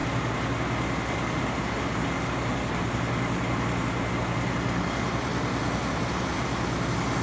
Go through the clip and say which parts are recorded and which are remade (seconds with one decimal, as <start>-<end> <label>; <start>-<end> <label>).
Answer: 0.0-7.2 recorded

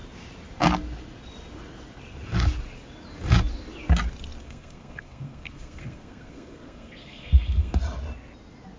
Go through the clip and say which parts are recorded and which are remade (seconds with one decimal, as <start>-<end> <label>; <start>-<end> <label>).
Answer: 0.0-4.4 recorded; 4.4-7.8 remade; 7.8-8.8 recorded

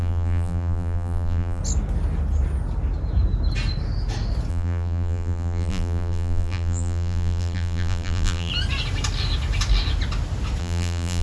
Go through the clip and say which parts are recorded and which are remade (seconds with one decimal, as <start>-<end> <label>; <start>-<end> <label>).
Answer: 0.0-1.6 remade; 1.6-4.5 recorded; 4.5-8.5 remade; 8.5-10.6 recorded; 10.6-11.2 remade

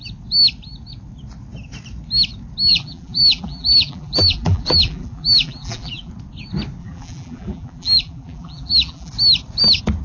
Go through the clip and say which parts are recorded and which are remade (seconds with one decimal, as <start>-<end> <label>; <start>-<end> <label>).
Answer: 0.0-2.7 recorded; 2.7-6.1 remade; 6.1-6.8 recorded; 6.8-9.1 remade; 9.1-10.0 recorded